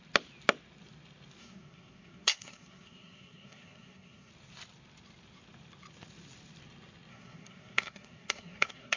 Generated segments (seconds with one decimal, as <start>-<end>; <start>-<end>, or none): 1.4-4.3; 7.1-9.0